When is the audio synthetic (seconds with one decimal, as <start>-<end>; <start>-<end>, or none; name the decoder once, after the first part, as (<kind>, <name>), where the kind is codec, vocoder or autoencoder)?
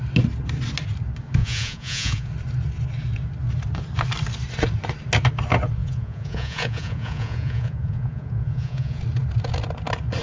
1.4-2.3 (vocoder, Vocos); 5.8-9.0